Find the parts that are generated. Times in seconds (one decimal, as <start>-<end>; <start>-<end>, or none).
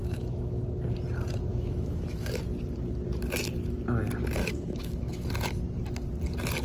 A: 0.0-0.6; 1.5-2.4; 4.4-5.3